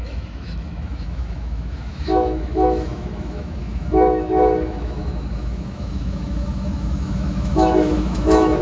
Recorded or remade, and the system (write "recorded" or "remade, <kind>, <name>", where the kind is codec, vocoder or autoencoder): remade, autoencoder, DAC-VAE